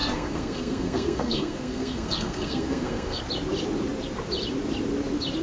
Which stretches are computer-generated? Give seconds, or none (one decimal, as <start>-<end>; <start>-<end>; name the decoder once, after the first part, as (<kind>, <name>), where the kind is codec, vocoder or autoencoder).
0.0-3.2 (codec, SNAC)

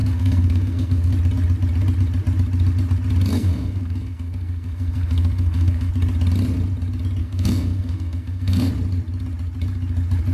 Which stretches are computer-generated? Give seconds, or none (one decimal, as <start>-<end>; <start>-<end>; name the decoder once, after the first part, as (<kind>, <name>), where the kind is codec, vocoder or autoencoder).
0.0-1.1 (codec, SNAC); 3.3-5.9; 7.2-8.7

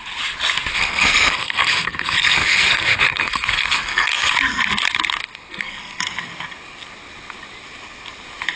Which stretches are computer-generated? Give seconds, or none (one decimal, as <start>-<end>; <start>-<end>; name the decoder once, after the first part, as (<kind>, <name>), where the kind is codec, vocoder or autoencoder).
0.7-4.3 (codec, SNAC); 5.2-6.0